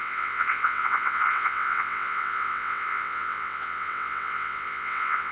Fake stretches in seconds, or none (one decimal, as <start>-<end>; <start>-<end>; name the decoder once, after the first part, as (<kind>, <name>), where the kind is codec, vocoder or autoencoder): 0.0-5.3 (vocoder, WaveNeXt)